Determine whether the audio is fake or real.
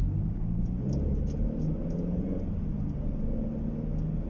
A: real